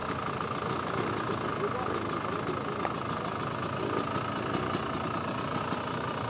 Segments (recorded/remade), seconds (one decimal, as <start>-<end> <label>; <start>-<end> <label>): 0.0-6.3 recorded